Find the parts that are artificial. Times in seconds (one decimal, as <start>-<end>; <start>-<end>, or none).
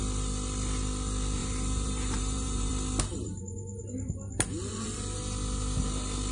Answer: 1.4-2.7; 3.1-3.8